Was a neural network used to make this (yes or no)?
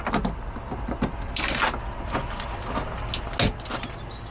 no